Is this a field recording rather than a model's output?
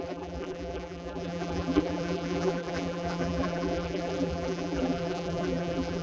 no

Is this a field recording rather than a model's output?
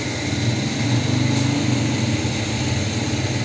yes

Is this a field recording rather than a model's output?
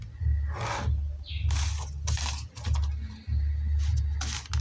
yes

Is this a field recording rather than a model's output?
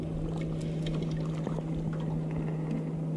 yes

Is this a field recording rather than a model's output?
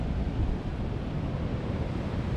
no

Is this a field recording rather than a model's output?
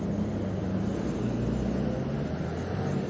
yes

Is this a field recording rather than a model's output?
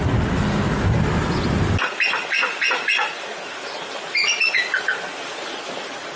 yes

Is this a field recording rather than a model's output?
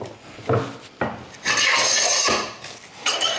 yes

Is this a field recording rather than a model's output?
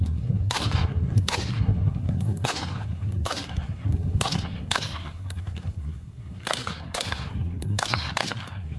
no